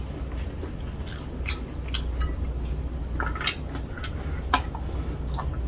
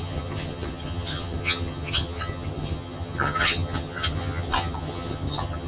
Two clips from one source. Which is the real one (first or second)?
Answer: first